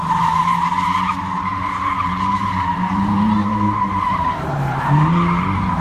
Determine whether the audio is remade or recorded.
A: remade